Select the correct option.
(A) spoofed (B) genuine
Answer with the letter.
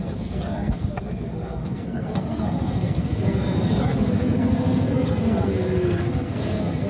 A